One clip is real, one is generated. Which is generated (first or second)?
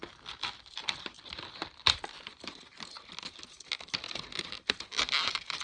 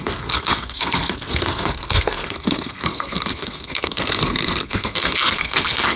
second